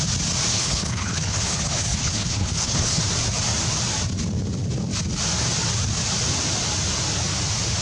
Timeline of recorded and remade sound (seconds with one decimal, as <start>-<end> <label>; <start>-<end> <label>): 0.0-0.5 recorded; 0.5-3.0 remade; 3.0-7.8 recorded